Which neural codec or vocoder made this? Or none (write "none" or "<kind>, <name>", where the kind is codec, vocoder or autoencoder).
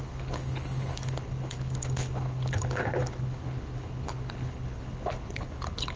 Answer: codec, HILCodec